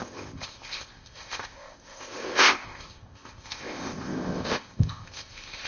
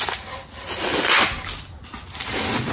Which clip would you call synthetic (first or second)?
first